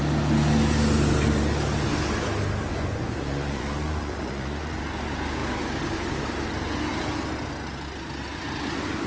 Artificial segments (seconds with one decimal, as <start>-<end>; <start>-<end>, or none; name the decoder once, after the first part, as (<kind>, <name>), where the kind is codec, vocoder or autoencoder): 2.7-4.8 (vocoder, Vocos)